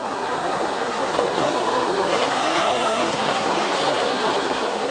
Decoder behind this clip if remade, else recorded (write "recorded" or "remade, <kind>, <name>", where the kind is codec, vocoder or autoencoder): remade, codec, SNAC